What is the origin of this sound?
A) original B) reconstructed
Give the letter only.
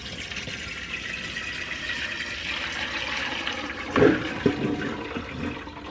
A